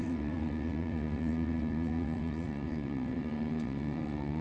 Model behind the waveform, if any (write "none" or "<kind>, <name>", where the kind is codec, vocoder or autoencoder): vocoder, WaveNeXt